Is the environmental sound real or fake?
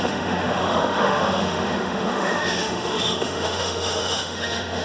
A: fake